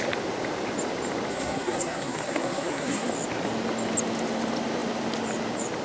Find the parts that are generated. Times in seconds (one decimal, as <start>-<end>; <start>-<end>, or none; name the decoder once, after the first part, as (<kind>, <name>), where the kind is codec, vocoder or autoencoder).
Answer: 1.3-3.1 (codec, SNAC)